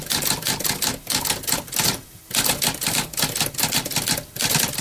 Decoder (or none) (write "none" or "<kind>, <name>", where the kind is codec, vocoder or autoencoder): none